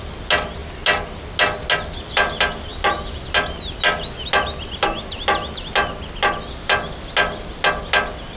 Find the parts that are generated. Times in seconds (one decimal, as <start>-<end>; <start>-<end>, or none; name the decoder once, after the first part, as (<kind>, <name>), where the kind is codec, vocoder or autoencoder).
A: none

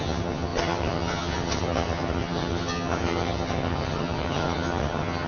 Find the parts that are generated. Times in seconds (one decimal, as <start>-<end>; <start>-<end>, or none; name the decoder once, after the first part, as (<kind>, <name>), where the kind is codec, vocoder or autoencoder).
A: 0.0-5.3 (vocoder, HiFi-GAN)

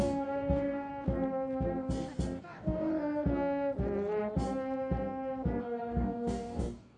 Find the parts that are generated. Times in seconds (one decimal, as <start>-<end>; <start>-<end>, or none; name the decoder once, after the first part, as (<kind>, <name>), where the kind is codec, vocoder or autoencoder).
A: 0.0-0.9 (codec, DAC); 2.4-2.9; 5.6-7.0

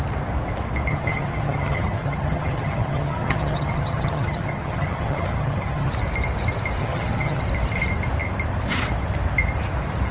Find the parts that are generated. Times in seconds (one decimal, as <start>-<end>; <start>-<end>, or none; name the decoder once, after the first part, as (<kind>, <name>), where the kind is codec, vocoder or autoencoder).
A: 0.9-5.9 (vocoder, HiFi-GAN); 6.8-7.4

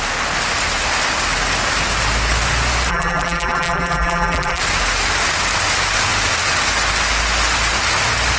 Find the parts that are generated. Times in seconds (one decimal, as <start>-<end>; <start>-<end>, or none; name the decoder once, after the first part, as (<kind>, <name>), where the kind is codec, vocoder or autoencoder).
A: 2.9-4.6 (vocoder, BigVGAN v2)

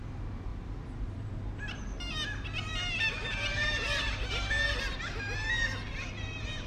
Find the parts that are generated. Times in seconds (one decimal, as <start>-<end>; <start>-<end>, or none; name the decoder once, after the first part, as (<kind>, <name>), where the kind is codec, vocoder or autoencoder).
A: 0.5-1.3 (vocoder, BigVGAN v2); 3.5-4.2